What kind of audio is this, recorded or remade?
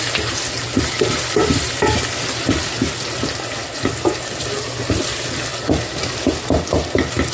recorded